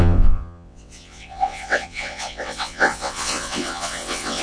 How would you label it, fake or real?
fake